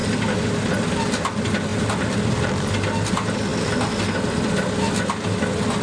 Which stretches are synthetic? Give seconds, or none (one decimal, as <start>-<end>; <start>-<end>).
none